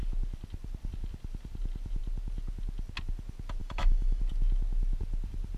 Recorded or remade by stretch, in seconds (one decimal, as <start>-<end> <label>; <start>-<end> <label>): 0.0-3.6 recorded; 3.6-4.2 remade; 4.2-5.6 recorded